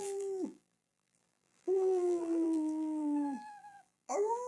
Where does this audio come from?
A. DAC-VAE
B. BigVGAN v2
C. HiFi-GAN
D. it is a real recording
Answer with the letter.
B